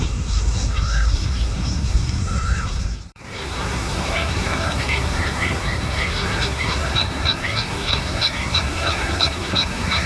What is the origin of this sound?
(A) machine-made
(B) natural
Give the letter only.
A